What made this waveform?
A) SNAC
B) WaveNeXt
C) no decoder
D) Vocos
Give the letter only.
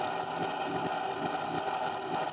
C